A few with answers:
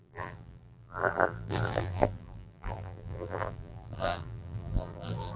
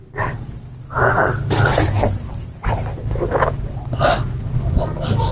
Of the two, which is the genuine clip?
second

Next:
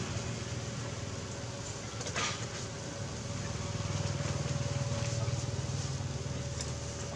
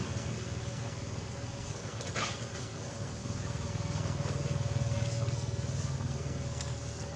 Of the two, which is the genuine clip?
first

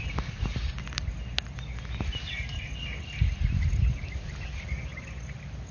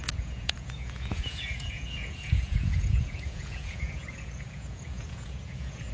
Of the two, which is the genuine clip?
first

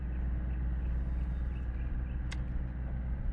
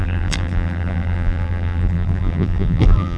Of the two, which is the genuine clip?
first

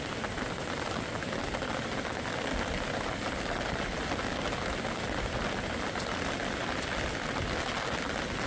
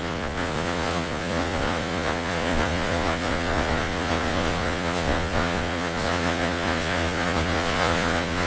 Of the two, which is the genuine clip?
first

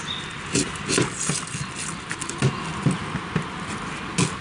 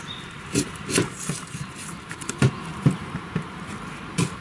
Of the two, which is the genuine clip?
first